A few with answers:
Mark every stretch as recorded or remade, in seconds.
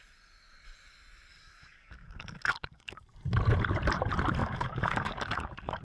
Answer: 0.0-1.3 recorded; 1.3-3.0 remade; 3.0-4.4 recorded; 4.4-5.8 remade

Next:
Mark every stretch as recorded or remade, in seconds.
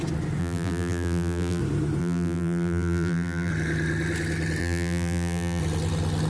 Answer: 0.0-0.4 recorded; 0.4-1.6 remade; 1.6-2.0 recorded; 2.0-3.5 remade; 3.5-4.6 recorded; 4.6-5.6 remade; 5.6-6.3 recorded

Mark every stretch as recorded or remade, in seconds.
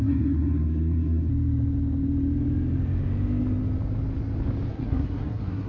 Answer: 0.0-1.3 remade; 1.3-4.7 recorded; 4.7-5.7 remade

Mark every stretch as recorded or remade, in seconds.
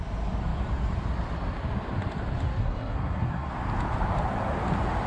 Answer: 0.0-2.6 recorded; 2.6-3.5 remade; 3.5-5.1 recorded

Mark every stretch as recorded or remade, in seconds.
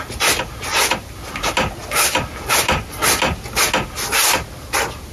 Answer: 0.0-5.1 recorded